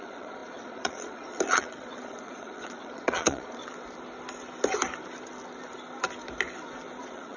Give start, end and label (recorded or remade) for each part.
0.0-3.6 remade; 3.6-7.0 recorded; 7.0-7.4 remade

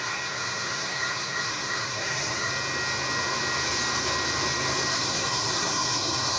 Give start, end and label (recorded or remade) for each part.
0.0-2.5 remade; 2.5-4.9 recorded; 4.9-6.4 remade

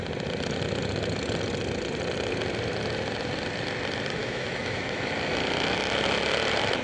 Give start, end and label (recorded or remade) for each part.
0.0-4.2 recorded; 4.2-5.1 remade; 5.1-6.8 recorded

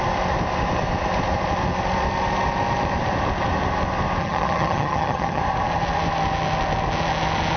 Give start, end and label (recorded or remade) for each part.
0.0-4.2 recorded; 4.2-5.4 remade; 5.4-7.6 recorded

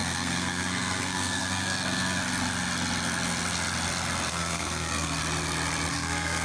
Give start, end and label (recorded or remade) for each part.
0.0-2.2 remade; 2.2-4.3 recorded; 4.3-5.2 remade; 5.2-5.9 recorded; 5.9-6.4 remade

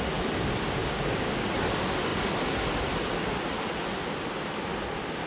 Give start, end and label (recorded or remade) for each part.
0.0-0.8 recorded; 0.8-1.5 remade; 1.5-5.3 recorded

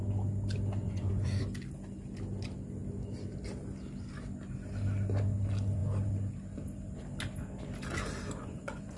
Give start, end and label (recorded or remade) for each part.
0.0-0.8 recorded; 0.8-1.4 remade; 1.4-8.4 recorded; 8.4-9.0 remade